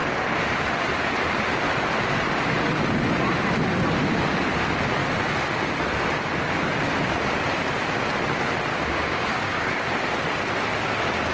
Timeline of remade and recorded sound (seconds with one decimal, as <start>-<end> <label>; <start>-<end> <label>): 0.0-8.7 recorded; 8.7-9.7 remade; 9.7-11.3 recorded

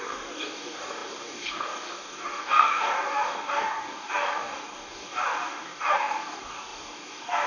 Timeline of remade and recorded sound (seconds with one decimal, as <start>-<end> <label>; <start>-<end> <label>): 0.0-7.5 remade

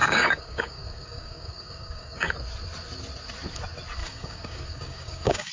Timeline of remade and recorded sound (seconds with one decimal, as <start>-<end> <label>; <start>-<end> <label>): 0.0-2.3 remade; 2.3-4.0 recorded; 4.0-5.5 remade

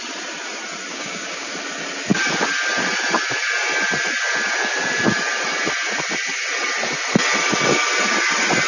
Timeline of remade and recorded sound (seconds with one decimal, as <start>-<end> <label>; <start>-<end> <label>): 0.0-0.9 recorded; 0.9-1.5 remade; 1.5-8.7 recorded

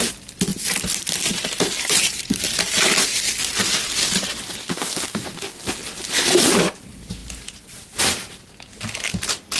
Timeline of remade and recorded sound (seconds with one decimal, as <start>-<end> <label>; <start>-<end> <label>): 0.0-4.6 recorded; 4.6-5.6 remade; 5.6-9.6 recorded

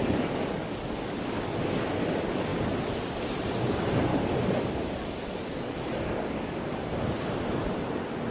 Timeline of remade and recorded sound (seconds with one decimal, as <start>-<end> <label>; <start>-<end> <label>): 0.0-1.5 remade; 1.5-4.1 recorded; 4.1-6.9 remade; 6.9-8.3 recorded